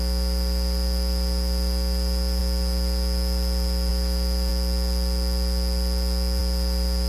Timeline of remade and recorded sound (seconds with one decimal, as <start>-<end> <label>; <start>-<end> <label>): 0.0-7.1 recorded